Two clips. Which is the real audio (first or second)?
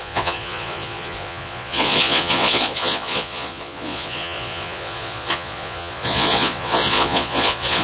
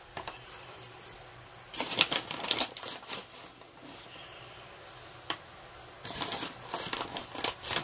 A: second